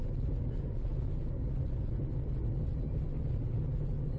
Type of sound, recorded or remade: recorded